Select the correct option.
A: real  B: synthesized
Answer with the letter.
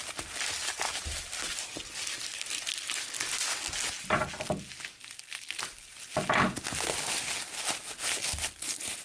A